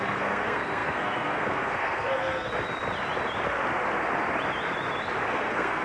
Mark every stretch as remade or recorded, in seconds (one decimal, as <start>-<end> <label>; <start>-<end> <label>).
0.0-2.5 remade; 2.5-5.3 recorded; 5.3-5.8 remade

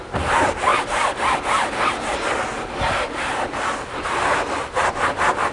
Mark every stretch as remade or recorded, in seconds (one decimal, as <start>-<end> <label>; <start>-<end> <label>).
0.0-5.5 recorded

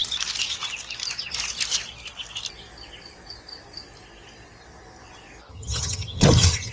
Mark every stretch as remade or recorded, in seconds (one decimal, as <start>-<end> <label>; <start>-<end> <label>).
0.0-5.5 recorded; 5.5-6.7 remade

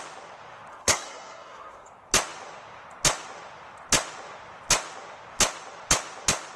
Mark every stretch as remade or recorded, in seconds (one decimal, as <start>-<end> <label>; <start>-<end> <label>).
0.0-0.7 recorded; 0.7-1.9 remade; 1.9-6.6 recorded

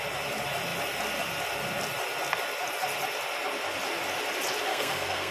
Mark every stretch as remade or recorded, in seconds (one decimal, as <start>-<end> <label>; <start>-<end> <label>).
0.0-4.7 recorded; 4.7-5.3 remade

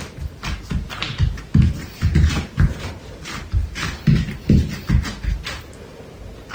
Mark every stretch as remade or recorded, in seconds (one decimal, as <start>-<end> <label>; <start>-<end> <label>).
0.0-2.1 recorded; 2.1-2.7 remade; 2.7-6.5 recorded

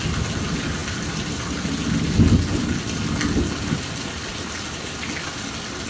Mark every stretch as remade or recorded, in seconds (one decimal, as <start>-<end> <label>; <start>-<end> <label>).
0.0-5.9 recorded

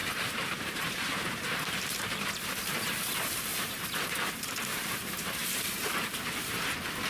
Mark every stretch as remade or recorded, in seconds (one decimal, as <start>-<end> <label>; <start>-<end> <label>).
0.0-2.2 remade; 2.2-3.5 recorded; 3.5-6.4 remade; 6.4-7.1 recorded